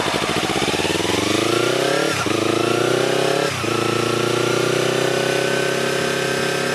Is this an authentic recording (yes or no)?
yes